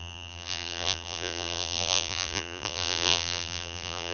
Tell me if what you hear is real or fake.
fake